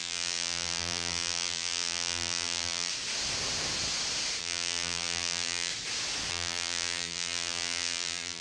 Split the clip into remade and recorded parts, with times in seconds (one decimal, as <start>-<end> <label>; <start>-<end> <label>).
0.0-2.9 remade; 2.9-4.4 recorded; 4.4-5.7 remade; 5.7-6.3 recorded; 6.3-8.4 remade